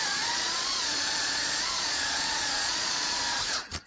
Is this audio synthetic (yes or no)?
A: yes